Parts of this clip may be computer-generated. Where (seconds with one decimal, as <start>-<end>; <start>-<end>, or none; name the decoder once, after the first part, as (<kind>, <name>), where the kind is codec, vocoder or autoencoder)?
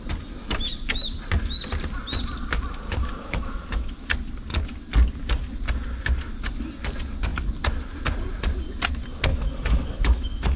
3.0-4.1 (autoencoder, DAC-VAE); 9.3-10.6